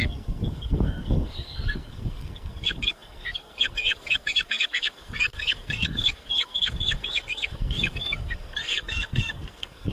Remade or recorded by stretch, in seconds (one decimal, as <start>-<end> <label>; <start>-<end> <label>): 0.0-9.9 remade